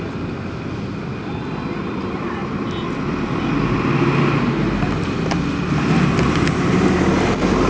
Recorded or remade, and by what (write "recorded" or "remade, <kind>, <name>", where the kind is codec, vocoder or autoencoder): recorded